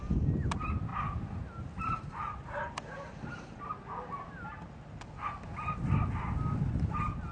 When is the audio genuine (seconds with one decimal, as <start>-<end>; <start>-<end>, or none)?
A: 0.0-7.3